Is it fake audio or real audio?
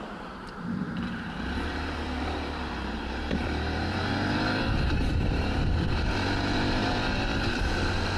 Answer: fake